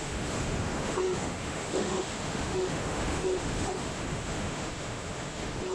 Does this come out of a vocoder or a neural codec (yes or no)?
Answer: yes